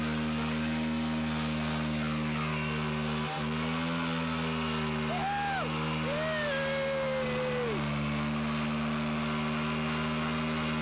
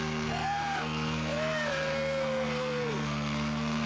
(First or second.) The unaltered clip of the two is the first